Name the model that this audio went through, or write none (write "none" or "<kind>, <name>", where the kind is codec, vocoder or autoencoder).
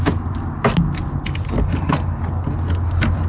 none